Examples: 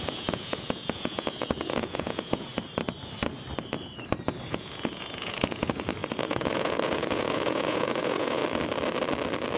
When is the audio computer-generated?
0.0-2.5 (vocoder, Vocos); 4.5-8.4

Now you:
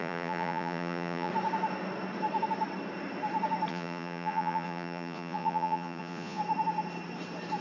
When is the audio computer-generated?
0.0-1.3 (vocoder, Vocos); 3.7-6.4

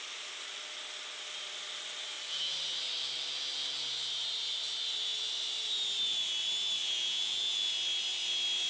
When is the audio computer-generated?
6.8-7.7 (vocoder, Vocos)

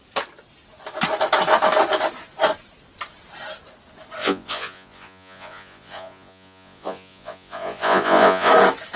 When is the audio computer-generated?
4.2-8.5 (vocoder, Vocos)